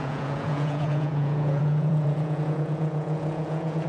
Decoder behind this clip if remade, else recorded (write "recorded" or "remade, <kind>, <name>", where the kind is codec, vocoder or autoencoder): remade, vocoder, Vocos